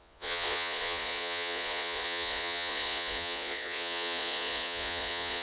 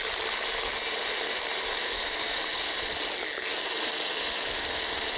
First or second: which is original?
second